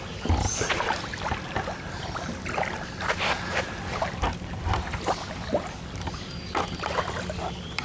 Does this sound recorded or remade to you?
recorded